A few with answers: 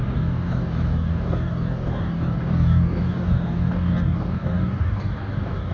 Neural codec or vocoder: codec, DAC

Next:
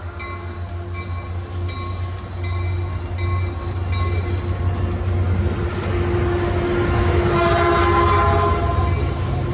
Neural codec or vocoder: none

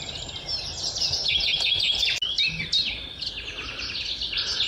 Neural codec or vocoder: none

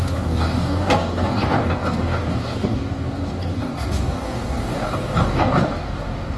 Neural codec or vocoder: codec, DAC